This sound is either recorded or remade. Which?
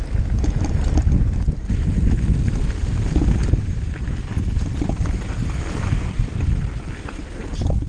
recorded